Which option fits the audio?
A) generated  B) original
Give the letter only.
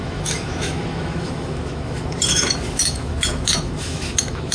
A